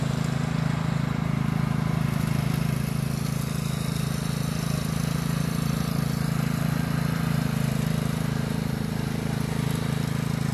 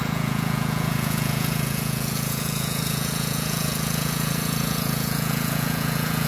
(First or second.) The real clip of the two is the first